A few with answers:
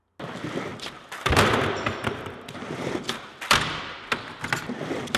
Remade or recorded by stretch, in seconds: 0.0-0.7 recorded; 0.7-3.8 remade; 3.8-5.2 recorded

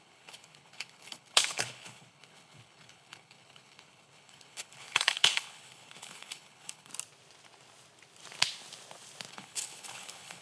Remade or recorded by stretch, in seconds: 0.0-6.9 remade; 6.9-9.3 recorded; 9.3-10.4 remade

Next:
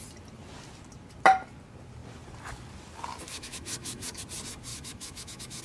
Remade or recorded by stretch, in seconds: 0.0-3.3 recorded; 3.3-4.2 remade; 4.2-4.7 recorded; 4.7-5.6 remade

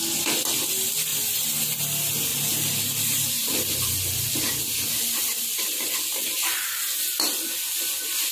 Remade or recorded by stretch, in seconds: 0.0-2.3 recorded; 2.3-3.9 remade; 3.9-6.1 recorded; 6.1-6.8 remade; 6.8-8.3 recorded